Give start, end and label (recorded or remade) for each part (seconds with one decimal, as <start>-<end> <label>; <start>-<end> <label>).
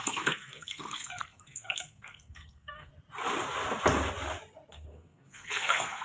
0.0-2.9 remade; 2.9-4.7 recorded; 4.7-6.0 remade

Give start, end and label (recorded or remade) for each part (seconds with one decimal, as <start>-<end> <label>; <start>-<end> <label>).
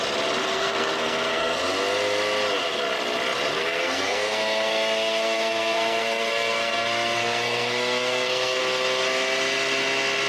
0.0-0.4 recorded; 0.4-1.6 remade; 1.6-3.5 recorded; 3.5-8.6 remade; 8.6-10.3 recorded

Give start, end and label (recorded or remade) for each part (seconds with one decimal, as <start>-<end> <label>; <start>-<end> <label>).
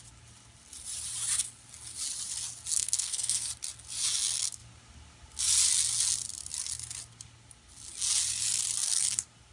0.0-2.7 recorded; 2.7-3.5 remade; 3.5-9.5 recorded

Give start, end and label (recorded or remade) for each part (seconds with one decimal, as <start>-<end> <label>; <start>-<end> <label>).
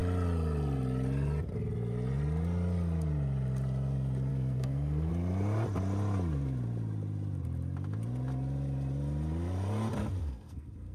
0.0-4.3 recorded; 4.3-5.1 remade; 5.1-10.2 recorded; 10.2-10.9 remade